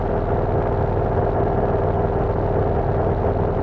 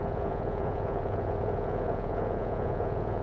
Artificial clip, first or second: second